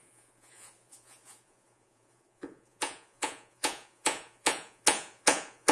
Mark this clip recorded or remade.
remade